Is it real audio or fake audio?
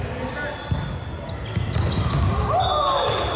real